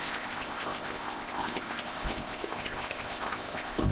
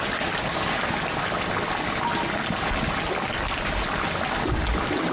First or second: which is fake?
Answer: first